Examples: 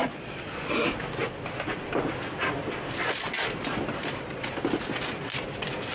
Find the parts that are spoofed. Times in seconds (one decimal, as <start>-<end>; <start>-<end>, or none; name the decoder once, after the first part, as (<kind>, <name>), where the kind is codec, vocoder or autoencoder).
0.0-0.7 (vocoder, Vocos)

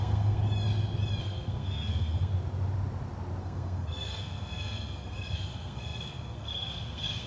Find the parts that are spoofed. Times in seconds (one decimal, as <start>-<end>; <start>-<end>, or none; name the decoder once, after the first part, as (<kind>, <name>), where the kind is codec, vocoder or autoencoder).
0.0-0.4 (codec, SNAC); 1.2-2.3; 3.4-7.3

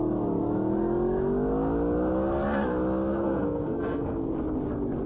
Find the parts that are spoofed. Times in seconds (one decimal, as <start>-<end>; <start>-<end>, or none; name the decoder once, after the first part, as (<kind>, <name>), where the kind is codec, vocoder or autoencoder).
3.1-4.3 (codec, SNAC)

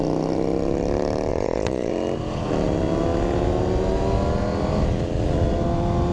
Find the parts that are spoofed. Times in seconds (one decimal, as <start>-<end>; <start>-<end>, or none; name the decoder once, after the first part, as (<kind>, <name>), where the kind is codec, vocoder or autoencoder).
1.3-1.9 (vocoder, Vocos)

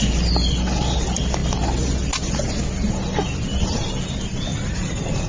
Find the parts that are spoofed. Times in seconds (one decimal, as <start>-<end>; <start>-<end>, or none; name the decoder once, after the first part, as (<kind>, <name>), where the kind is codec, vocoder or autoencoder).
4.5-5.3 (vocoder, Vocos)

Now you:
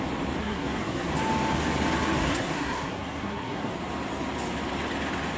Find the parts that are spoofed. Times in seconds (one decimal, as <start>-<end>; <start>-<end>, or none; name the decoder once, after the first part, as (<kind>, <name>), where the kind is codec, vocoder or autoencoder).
0.4-1.1 (codec, SNAC); 2.2-3.7

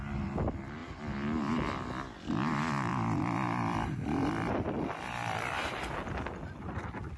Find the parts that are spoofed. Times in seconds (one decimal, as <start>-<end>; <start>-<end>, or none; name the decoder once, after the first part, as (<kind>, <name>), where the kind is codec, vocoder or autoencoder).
none